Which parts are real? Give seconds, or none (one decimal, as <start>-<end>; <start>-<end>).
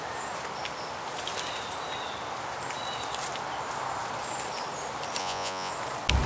0.0-5.2; 5.7-6.3